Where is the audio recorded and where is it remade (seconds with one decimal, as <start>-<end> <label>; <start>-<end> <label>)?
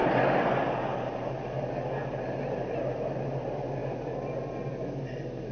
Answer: 0.0-5.5 recorded